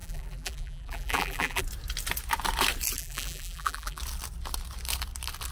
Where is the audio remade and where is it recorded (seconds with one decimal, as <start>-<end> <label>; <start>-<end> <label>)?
0.0-1.6 remade; 1.6-3.0 recorded; 3.0-4.0 remade; 4.0-5.5 recorded